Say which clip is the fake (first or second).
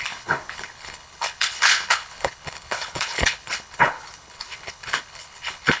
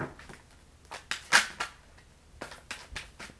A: first